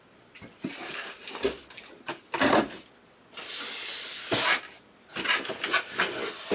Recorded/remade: recorded